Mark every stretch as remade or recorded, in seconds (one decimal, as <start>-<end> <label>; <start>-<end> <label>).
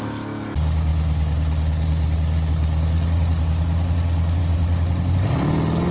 0.0-5.9 recorded